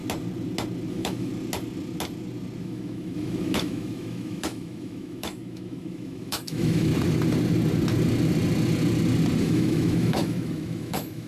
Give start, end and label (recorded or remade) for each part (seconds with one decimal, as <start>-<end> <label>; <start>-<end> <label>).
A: 0.0-0.9 recorded; 0.9-1.3 remade; 1.3-2.6 recorded; 2.6-6.9 remade; 6.9-9.4 recorded; 9.4-11.3 remade